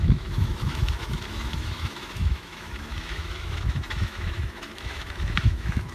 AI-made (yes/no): yes